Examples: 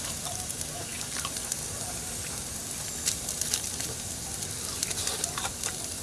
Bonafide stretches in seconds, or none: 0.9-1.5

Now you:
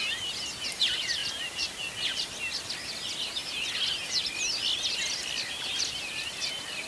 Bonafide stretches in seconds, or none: 0.0-1.2; 2.7-6.9

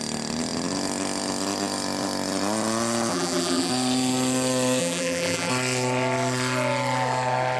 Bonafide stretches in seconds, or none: 0.0-3.1; 3.7-4.8; 5.5-7.6

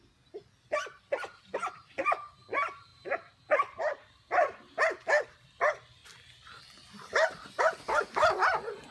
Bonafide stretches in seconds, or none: 0.0-2.9; 3.5-8.9

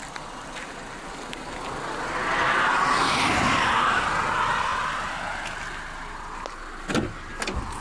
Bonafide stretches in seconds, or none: 0.7-7.8